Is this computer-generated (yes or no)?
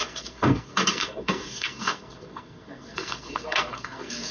yes